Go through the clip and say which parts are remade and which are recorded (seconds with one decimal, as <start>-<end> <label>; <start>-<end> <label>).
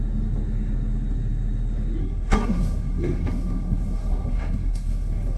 0.0-2.0 recorded; 2.0-5.4 remade